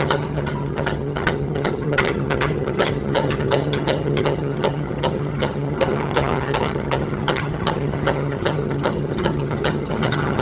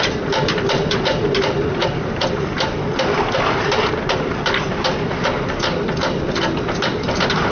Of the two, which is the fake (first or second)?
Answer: first